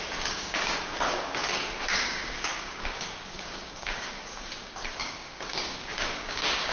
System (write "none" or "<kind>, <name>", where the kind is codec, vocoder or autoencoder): codec, DAC